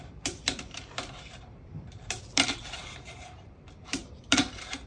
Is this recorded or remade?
remade